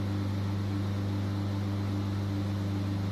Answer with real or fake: real